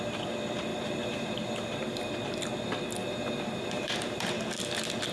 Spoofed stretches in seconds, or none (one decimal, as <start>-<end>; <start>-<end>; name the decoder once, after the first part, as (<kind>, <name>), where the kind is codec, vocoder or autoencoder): 0.7-2.1 (vocoder, BigVGAN v2); 3.0-4.3